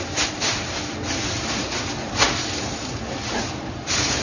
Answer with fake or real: real